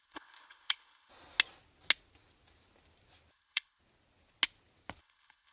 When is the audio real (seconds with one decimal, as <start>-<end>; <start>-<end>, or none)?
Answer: 1.1-3.3; 3.8-5.0